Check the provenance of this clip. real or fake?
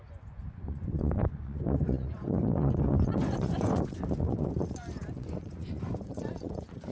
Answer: fake